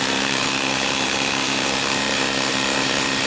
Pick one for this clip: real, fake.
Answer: fake